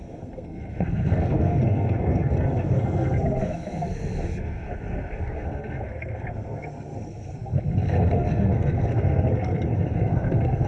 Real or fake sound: fake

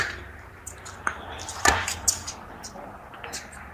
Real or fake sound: real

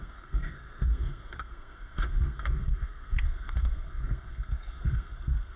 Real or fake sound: fake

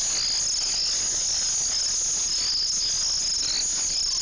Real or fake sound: real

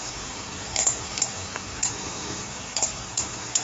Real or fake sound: fake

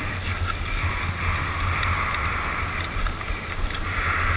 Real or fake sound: real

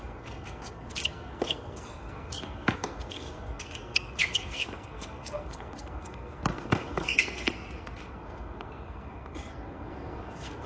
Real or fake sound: fake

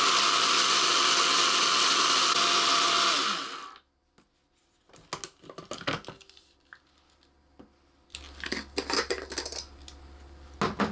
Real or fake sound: real